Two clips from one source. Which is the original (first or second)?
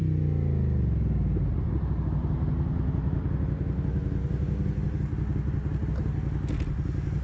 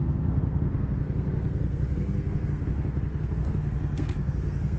first